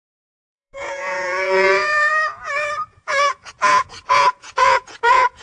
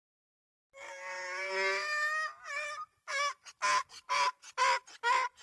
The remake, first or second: first